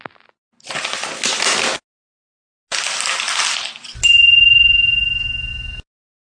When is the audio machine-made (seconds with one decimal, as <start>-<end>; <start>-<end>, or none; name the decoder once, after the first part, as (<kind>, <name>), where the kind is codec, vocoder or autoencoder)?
none